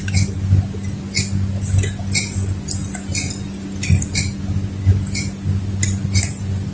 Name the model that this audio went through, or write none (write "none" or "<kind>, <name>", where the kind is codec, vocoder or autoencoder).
none